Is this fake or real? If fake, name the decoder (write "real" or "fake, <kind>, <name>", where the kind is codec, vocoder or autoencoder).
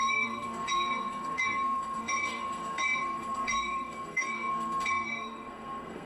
fake, codec, SNAC